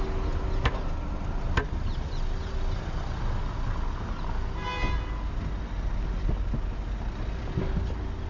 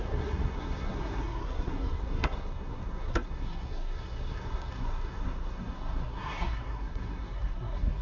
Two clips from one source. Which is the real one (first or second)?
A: first